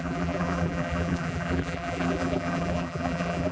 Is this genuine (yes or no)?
no